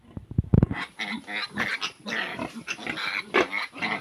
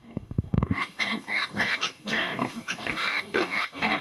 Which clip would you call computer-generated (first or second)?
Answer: second